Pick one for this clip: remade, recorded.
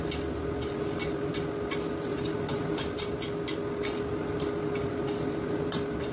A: recorded